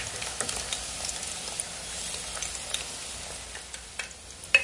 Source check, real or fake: real